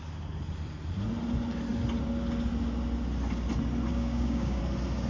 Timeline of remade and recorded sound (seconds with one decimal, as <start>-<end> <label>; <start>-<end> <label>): 0.0-3.9 recorded; 3.9-4.6 remade; 4.6-5.1 recorded